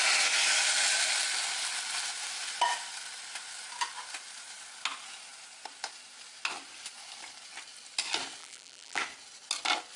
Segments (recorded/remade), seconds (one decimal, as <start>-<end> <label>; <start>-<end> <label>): 0.0-8.4 recorded; 8.4-9.0 remade; 9.0-10.0 recorded